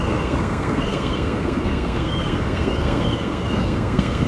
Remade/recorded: remade